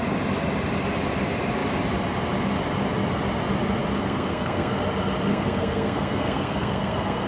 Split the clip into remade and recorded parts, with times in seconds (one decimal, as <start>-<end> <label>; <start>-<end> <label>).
0.0-4.0 recorded; 4.0-4.7 remade; 4.7-5.3 recorded; 5.3-7.3 remade